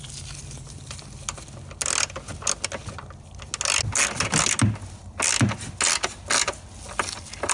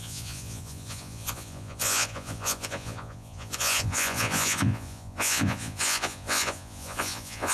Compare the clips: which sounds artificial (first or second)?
second